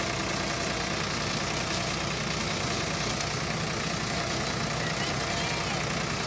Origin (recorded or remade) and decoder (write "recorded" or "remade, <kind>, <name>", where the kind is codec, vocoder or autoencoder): recorded